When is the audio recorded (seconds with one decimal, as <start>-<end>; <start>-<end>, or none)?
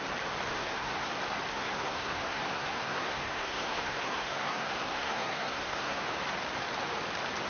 0.0-0.5; 1.1-1.5; 6.0-7.5